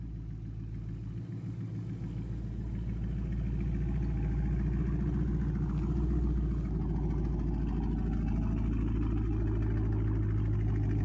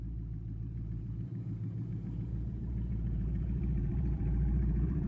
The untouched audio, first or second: first